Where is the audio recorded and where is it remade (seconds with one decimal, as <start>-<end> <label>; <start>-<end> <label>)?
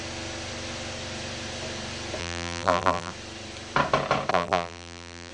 0.0-2.2 recorded; 2.2-3.1 remade; 3.1-4.3 recorded; 4.3-5.3 remade